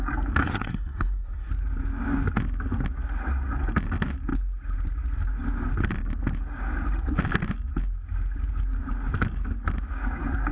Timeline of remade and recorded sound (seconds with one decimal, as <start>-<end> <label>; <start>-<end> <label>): 0.0-0.4 recorded; 0.4-1.5 remade; 1.5-10.5 recorded